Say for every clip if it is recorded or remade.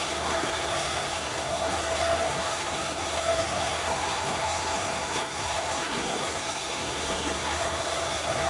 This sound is remade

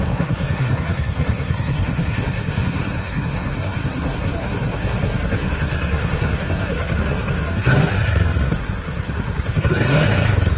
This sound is remade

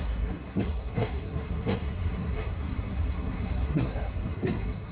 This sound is remade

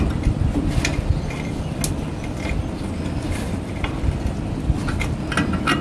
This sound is recorded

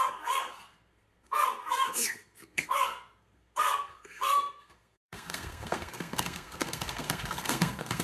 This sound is remade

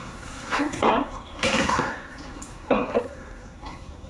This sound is remade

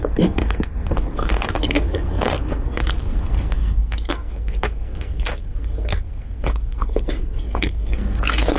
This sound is remade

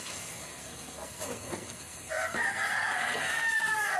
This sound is remade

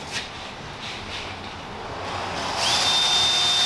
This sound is recorded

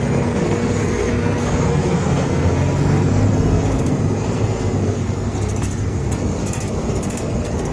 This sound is remade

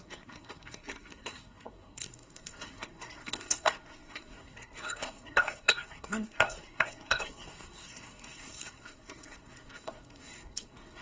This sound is remade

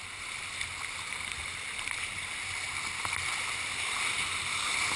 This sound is recorded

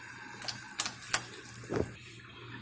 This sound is recorded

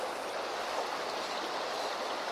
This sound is recorded